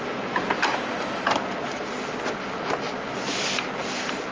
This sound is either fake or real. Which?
real